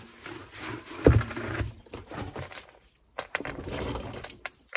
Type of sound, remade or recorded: remade